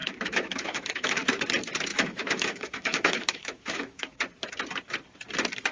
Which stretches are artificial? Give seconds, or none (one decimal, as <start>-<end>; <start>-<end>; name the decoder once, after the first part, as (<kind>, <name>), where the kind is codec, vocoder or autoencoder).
0.0-1.4 (autoencoder, DAC-VAE); 1.9-4.2